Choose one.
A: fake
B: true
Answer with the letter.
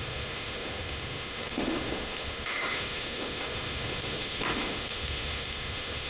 A